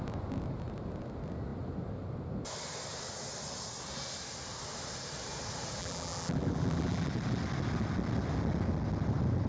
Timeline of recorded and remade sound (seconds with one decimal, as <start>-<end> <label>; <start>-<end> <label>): 0.0-5.8 recorded; 5.8-7.1 remade; 7.1-9.5 recorded